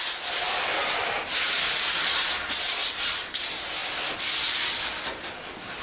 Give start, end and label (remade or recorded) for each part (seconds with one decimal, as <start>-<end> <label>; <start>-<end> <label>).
0.0-0.8 recorded; 0.8-2.4 remade; 2.4-2.8 recorded; 2.8-3.4 remade; 3.4-5.8 recorded